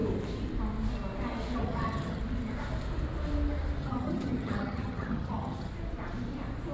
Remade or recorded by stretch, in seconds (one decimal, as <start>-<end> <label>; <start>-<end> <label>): 0.0-1.6 recorded; 1.6-2.2 remade; 2.2-3.8 recorded; 3.8-5.7 remade; 5.7-6.7 recorded